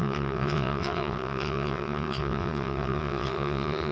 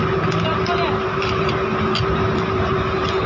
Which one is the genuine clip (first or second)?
second